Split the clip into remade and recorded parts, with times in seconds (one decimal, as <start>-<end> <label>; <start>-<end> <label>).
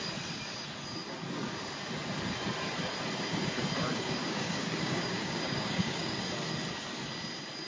0.0-3.9 recorded; 3.9-6.2 remade; 6.2-7.7 recorded